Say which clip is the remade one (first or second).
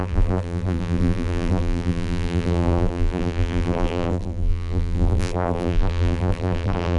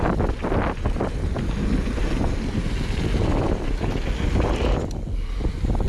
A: first